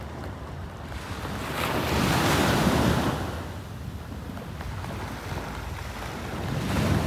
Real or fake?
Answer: real